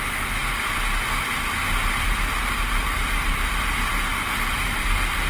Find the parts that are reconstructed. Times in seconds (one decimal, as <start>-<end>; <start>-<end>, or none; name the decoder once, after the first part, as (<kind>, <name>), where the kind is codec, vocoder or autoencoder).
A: none